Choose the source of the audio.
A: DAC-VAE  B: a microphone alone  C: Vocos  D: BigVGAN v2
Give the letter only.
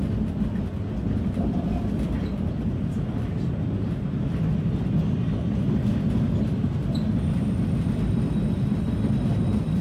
B